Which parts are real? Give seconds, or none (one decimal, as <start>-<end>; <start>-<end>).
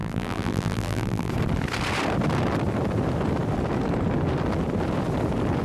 1.3-5.6